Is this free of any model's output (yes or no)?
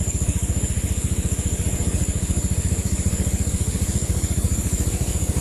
no